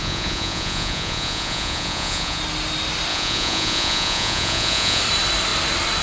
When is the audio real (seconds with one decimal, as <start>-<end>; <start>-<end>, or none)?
2.4-3.1; 5.0-6.0